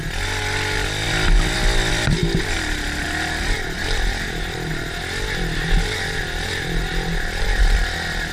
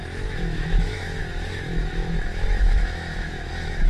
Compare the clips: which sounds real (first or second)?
first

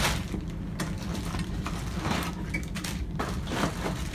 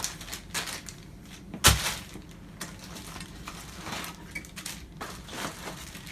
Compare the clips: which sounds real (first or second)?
second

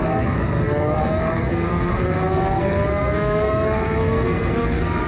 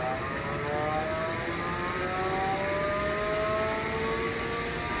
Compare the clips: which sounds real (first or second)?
second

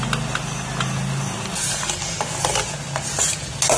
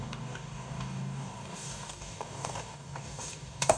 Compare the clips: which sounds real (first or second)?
first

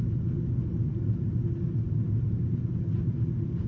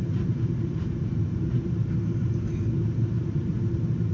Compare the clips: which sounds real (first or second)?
first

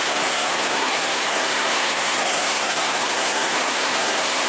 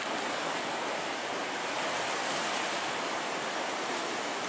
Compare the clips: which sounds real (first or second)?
second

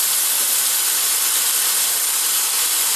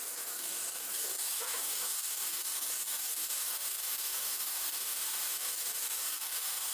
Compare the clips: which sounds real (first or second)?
first